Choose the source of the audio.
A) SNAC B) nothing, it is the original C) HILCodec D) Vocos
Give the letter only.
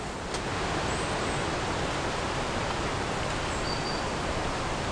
B